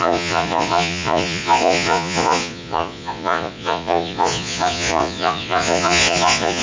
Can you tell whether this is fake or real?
fake